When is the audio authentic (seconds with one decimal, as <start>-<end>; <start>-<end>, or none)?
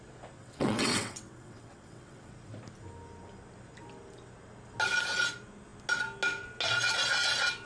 0.0-0.4; 2.3-7.7